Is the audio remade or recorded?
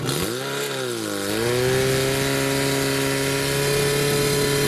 recorded